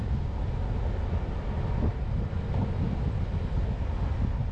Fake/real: real